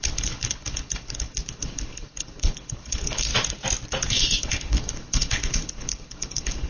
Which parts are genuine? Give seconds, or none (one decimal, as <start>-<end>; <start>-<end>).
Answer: 3.3-4.1